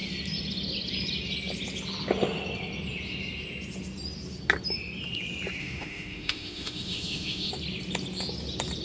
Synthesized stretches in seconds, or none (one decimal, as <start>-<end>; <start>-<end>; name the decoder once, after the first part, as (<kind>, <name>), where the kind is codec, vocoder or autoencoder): 5.6-7.5 (autoencoder, DAC-VAE)